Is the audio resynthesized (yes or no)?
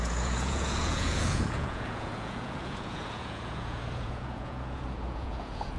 yes